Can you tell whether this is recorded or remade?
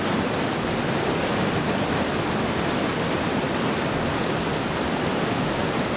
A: recorded